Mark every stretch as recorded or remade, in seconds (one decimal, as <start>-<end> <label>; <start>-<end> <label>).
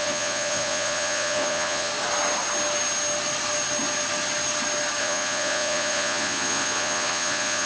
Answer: 0.0-1.9 remade; 1.9-5.0 recorded; 5.0-7.7 remade